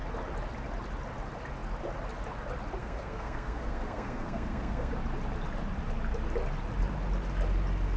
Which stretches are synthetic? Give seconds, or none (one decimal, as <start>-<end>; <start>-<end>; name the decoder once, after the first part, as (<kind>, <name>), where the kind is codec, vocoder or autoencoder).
2.8-4.9 (codec, SNAC)

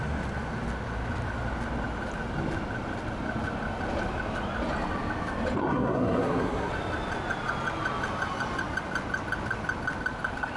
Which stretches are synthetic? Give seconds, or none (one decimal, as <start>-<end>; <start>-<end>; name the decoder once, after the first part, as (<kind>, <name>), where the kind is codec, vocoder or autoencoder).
5.6-6.7 (codec, SNAC)

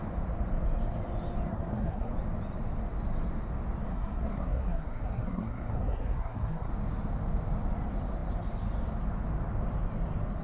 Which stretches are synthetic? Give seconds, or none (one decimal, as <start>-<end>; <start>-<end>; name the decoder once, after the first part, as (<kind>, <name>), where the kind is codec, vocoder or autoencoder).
1.5-2.1 (codec, SNAC); 3.9-6.7

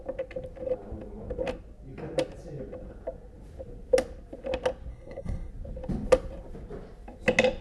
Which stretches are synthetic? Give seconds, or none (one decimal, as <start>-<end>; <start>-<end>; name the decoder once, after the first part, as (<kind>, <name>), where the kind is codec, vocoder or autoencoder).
4.9-5.5 (codec, SNAC)

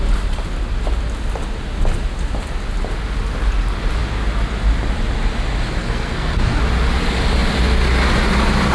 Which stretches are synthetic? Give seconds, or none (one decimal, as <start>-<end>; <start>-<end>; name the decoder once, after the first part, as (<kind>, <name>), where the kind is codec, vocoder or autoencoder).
5.8-6.6 (codec, SNAC)

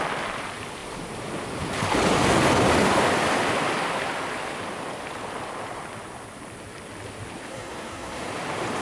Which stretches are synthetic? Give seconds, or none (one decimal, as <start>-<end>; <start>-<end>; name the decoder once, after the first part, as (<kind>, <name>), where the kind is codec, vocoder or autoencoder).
7.5-8.3 (codec, SNAC)

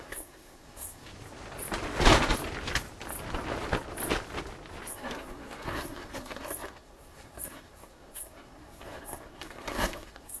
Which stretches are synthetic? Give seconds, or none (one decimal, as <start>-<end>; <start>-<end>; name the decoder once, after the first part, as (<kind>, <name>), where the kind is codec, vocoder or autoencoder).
0.0-1.1 (codec, SNAC); 4.9-10.4

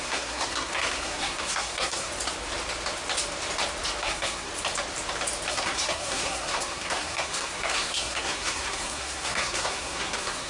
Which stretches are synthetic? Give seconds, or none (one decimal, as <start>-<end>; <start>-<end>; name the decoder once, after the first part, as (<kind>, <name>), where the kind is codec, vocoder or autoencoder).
0.0-2.1 (codec, SNAC); 4.0-4.5; 5.5-10.5